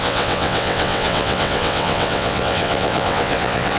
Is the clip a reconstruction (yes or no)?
yes